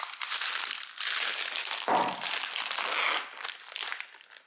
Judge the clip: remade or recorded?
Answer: recorded